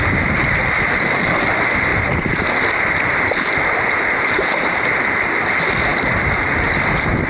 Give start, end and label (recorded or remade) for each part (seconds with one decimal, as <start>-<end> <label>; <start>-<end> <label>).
0.0-1.9 recorded; 1.9-5.5 remade; 5.5-7.3 recorded